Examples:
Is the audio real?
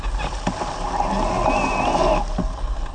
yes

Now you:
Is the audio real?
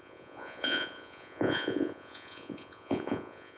no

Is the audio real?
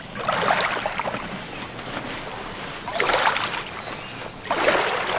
yes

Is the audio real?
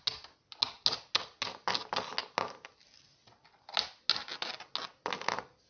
yes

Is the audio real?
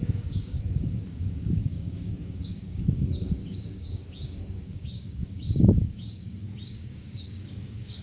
no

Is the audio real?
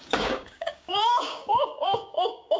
no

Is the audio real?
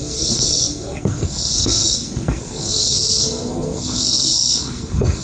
no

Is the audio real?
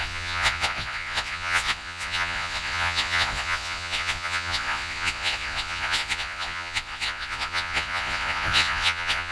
no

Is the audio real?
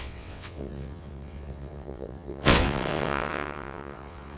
no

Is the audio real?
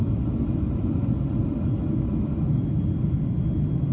yes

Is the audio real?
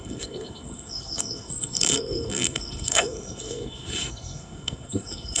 no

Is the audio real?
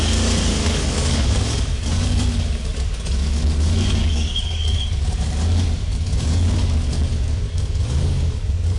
no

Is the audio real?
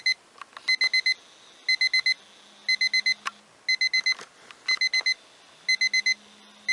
yes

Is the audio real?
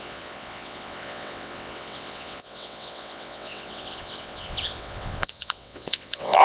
no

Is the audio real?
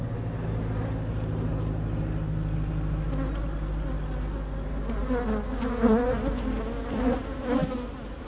yes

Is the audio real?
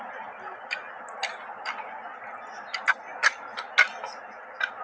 yes